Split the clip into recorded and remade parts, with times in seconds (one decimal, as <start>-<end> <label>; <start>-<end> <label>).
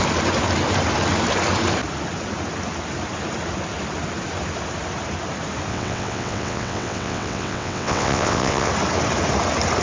0.0-5.7 recorded; 5.7-8.7 remade; 8.7-9.8 recorded